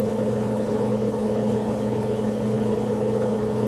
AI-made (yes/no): yes